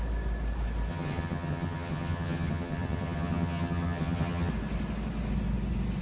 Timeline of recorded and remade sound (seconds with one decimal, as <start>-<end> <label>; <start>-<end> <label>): 0.0-0.9 recorded; 0.9-4.5 remade; 4.5-6.0 recorded